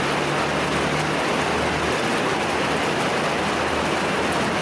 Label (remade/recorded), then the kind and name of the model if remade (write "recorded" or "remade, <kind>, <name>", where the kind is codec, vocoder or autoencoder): recorded